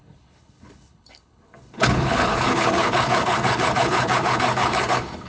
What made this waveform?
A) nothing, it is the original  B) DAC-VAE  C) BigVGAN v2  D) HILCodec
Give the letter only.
D